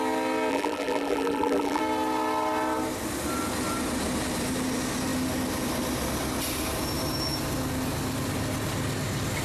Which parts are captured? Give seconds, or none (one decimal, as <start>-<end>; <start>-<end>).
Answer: 0.0-0.5; 1.8-9.4